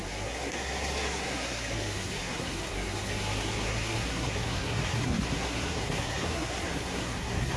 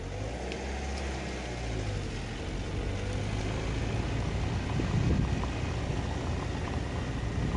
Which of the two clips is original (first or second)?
second